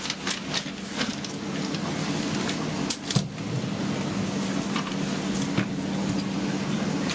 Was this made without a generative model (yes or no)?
yes